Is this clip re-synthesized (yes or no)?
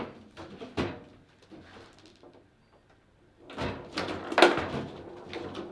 no